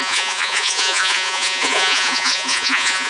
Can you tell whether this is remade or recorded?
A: remade